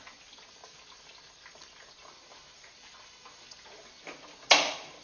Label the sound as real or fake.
real